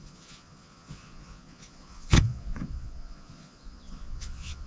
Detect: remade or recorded remade